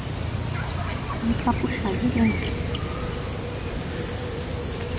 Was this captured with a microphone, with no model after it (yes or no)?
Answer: yes